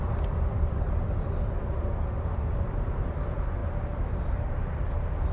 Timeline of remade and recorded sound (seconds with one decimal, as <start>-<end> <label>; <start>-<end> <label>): 0.0-5.3 recorded